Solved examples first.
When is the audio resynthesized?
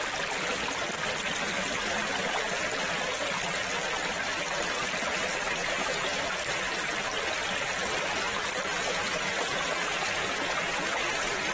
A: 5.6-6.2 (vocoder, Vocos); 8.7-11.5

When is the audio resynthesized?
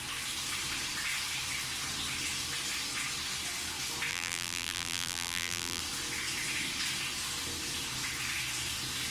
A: 4.1-5.8 (vocoder, BigVGAN v2)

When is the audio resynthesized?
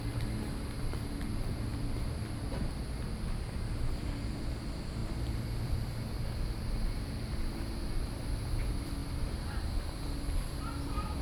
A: 5.0-6.1 (vocoder, BigVGAN v2); 9.0-10.0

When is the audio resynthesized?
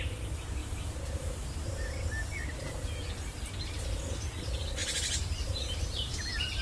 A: 0.6-2.1 (vocoder, BigVGAN v2); 4.8-6.1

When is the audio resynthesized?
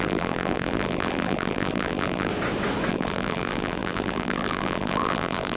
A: 0.0-2.3 (vocoder, BigVGAN v2); 2.9-5.6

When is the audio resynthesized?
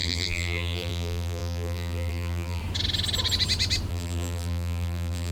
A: 0.0-2.6 (vocoder, BigVGAN v2); 3.9-5.3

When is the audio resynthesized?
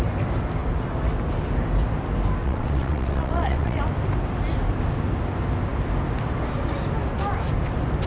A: 2.4-3.8 (vocoder, WaveNeXt)